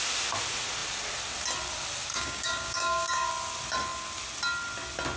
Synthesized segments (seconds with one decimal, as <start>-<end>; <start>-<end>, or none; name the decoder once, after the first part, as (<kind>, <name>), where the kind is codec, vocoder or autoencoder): 2.1-3.3 (codec, DAC)